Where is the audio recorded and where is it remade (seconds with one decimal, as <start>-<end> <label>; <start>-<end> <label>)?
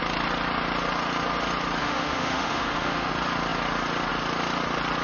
0.0-1.8 recorded; 1.8-3.1 remade; 3.1-5.0 recorded